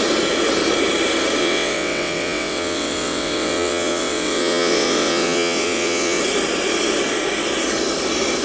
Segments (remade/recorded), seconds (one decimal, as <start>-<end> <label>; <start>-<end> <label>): 0.0-1.4 recorded; 1.4-6.2 remade; 6.2-8.4 recorded